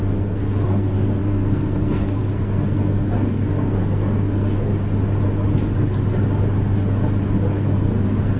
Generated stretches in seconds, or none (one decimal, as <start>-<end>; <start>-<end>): 0.0-4.7; 7.5-8.4